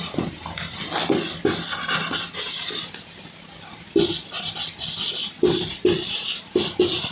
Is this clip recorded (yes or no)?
yes